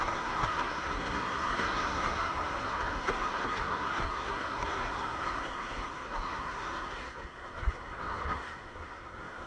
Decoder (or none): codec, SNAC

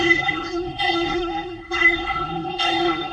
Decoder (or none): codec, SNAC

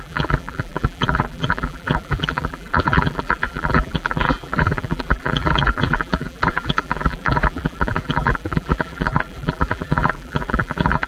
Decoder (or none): vocoder, BigVGAN v2